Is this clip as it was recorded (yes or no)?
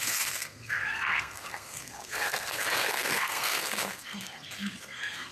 no